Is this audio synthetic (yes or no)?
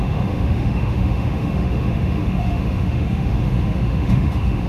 yes